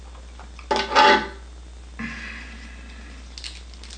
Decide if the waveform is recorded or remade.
recorded